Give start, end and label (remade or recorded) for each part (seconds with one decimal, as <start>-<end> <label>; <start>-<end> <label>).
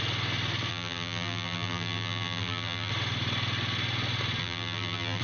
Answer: 0.0-0.7 recorded; 0.7-2.9 remade; 2.9-4.4 recorded; 4.4-5.2 remade